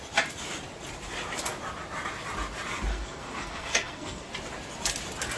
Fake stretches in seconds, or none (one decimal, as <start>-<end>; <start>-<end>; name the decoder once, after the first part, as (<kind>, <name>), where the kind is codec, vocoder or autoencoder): 2.9-4.3 (codec, SNAC)